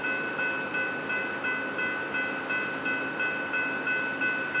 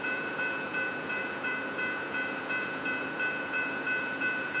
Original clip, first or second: first